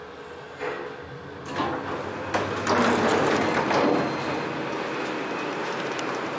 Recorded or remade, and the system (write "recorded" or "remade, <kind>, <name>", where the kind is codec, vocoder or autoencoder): recorded